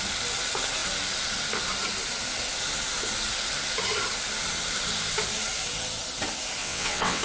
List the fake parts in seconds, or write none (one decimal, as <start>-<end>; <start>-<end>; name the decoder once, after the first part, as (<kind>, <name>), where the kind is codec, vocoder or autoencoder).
6.6-7.2 (vocoder, WaveNeXt)

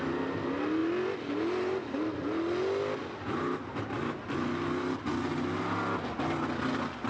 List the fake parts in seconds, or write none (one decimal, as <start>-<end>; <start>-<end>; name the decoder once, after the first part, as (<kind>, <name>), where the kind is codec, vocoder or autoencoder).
none